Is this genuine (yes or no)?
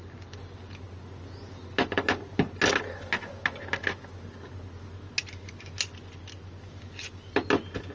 yes